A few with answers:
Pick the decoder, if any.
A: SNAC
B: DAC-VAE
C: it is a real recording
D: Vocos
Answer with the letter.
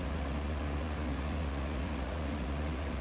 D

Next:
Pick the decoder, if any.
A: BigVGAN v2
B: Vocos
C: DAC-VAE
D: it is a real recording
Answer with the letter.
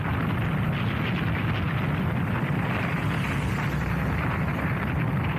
D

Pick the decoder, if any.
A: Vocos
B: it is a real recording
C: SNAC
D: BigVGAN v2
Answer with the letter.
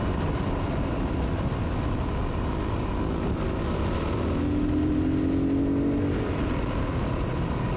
B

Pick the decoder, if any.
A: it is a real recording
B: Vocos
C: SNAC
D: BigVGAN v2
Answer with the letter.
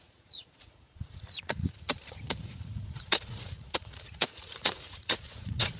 B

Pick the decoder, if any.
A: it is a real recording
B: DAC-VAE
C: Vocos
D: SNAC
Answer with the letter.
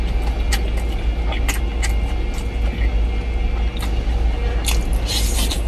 A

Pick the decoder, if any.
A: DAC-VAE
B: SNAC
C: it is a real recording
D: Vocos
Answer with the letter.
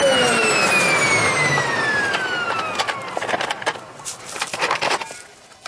C